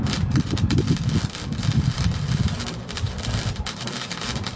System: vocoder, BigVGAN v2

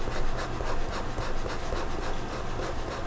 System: none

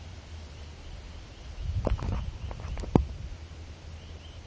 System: none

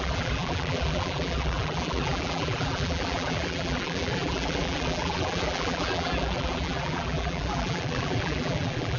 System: vocoder, BigVGAN v2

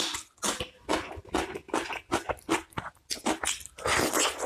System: none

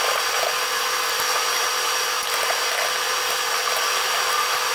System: none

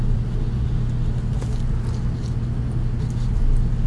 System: none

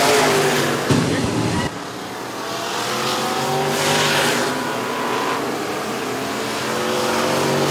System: none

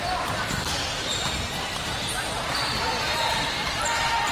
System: vocoder, BigVGAN v2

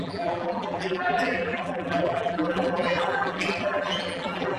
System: vocoder, BigVGAN v2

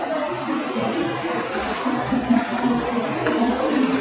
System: none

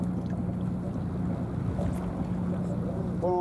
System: none